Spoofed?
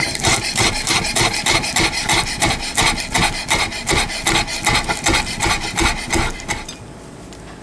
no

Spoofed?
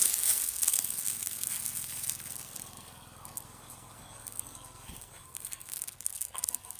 yes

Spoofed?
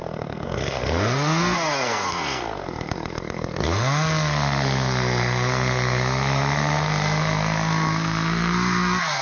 yes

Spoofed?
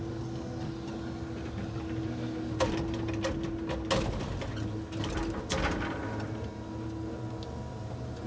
no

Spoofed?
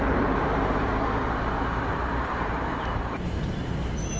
yes